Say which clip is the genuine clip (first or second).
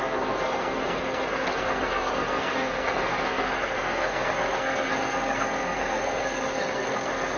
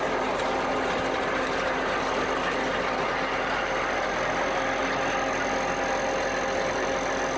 second